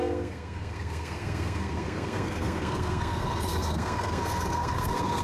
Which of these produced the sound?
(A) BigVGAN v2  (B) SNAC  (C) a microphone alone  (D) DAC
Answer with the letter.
B